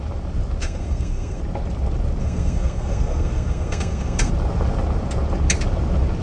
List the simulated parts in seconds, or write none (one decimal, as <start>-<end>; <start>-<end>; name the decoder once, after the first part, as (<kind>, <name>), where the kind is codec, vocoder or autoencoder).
0.6-1.4 (codec, SNAC); 2.2-4.3